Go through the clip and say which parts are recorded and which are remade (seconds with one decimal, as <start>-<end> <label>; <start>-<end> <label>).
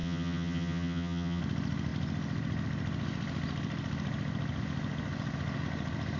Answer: 0.0-1.4 remade; 1.4-6.2 recorded